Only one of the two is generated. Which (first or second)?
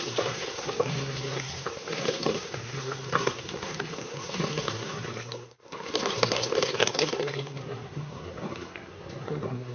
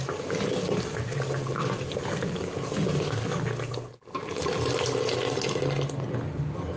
first